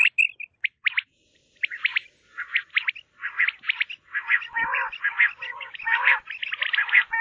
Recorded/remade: recorded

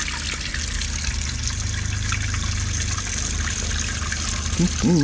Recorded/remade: recorded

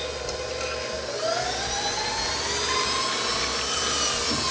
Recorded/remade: recorded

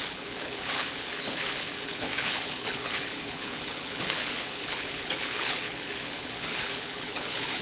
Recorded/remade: remade